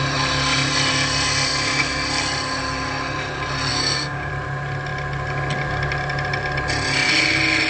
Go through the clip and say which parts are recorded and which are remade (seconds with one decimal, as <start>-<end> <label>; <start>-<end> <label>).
0.0-3.7 recorded; 3.7-4.3 remade; 4.3-7.7 recorded